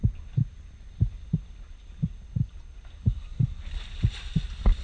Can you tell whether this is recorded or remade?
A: recorded